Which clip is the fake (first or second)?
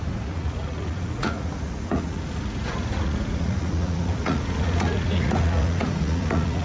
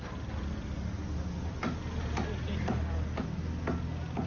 first